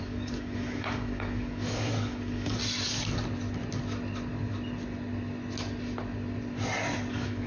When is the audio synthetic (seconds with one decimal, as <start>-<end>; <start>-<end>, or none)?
0.0-2.6; 7.1-7.5